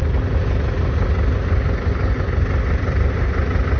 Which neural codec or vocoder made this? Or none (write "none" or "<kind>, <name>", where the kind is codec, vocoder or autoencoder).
none